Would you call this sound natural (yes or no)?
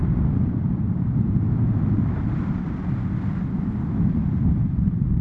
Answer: no